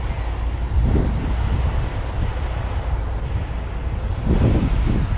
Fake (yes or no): no